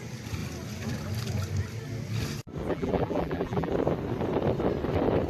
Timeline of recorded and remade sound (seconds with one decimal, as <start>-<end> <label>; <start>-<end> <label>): 0.0-2.7 recorded; 2.7-3.7 remade; 3.7-5.3 recorded

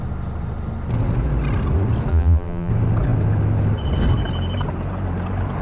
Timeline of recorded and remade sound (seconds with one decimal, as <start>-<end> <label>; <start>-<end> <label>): 0.0-2.1 recorded; 2.1-2.7 remade; 2.7-5.6 recorded

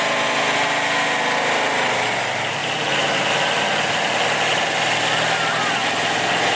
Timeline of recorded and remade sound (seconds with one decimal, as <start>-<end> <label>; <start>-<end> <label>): 0.0-2.6 recorded; 2.6-3.3 remade; 3.3-5.8 recorded; 5.8-6.6 remade